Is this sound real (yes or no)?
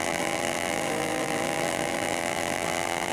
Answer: no